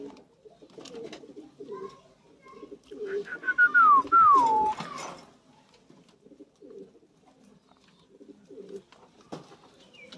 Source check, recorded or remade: recorded